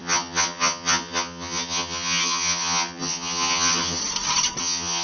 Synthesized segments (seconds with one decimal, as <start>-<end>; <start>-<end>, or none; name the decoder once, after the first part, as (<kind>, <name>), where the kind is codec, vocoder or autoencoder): 0.0-4.0 (vocoder, HiFi-GAN); 4.6-5.0

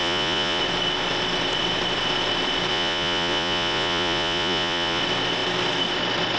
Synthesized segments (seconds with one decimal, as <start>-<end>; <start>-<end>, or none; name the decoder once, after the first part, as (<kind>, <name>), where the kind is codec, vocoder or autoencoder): 0.0-0.6 (vocoder, Vocos); 2.7-5.0

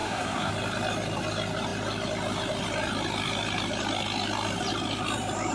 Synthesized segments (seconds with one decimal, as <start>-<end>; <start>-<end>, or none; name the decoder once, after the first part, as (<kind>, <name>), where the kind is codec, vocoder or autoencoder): 0.0-0.5 (codec, SNAC)

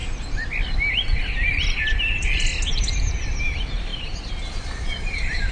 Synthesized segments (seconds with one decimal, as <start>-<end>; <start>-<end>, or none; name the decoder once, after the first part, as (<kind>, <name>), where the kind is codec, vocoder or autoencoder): 0.9-2.5 (vocoder, BigVGAN v2); 3.4-3.9; 4.8-5.5

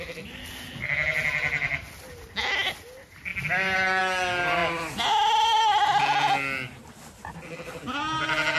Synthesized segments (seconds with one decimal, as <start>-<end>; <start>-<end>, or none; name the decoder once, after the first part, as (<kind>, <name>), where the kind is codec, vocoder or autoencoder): none

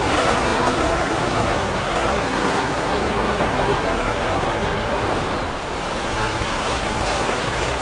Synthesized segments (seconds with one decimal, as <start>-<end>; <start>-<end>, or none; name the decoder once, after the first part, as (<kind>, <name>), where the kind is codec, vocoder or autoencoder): 0.0-5.0 (codec, SNAC); 6.0-7.8